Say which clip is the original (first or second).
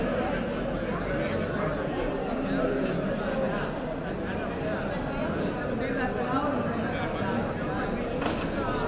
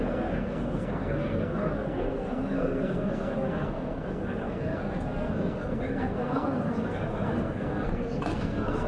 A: first